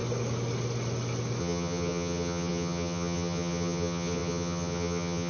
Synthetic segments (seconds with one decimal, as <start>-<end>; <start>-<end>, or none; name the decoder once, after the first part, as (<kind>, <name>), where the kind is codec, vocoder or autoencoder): 1.4-5.3 (vocoder, HiFi-GAN)